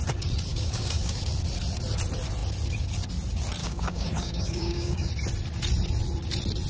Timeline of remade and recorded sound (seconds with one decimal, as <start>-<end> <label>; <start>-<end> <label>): 0.0-0.5 recorded; 0.5-1.2 remade; 1.2-3.6 recorded; 3.6-5.1 remade; 5.1-6.7 recorded

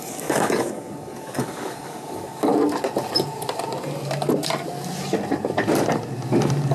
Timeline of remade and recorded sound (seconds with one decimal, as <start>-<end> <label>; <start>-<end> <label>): 0.0-2.5 remade; 2.5-6.7 recorded

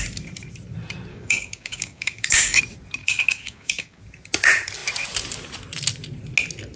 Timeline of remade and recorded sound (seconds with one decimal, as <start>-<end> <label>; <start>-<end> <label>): 0.0-1.1 recorded; 1.1-2.6 remade; 2.6-3.0 recorded; 3.0-4.0 remade; 4.0-6.8 recorded

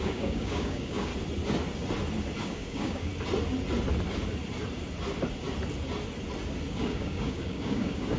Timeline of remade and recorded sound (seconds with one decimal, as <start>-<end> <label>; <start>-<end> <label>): 0.0-1.1 remade; 1.1-2.4 recorded; 2.4-3.1 remade; 3.1-6.7 recorded; 6.7-8.2 remade

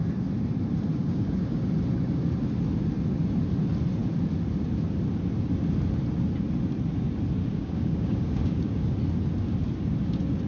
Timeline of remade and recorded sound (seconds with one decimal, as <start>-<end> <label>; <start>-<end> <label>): 0.0-0.9 recorded; 0.9-1.6 remade; 1.6-7.4 recorded; 7.4-8.9 remade; 8.9-10.5 recorded

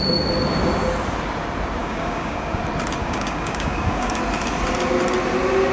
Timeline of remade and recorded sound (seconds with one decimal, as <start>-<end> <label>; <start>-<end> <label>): 0.0-1.8 recorded; 1.8-2.6 remade; 2.6-3.0 recorded; 3.0-4.2 remade; 4.2-5.7 recorded